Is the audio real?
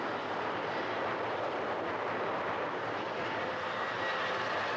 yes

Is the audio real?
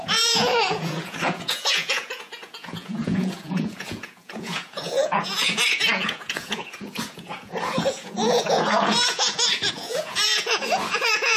no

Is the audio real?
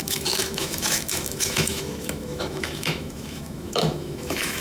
no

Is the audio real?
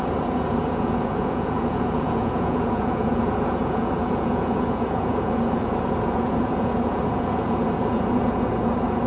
no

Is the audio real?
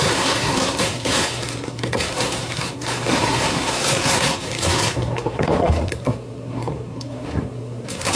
no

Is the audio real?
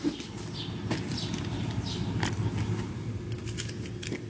yes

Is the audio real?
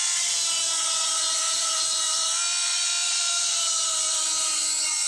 no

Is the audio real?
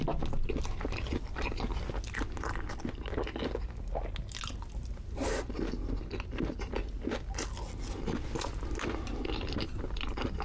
yes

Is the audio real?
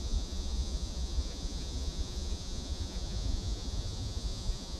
no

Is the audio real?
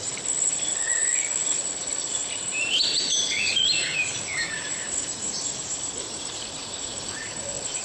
yes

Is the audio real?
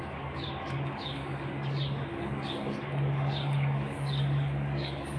no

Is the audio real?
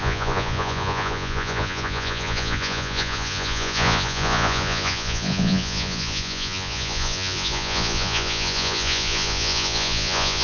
no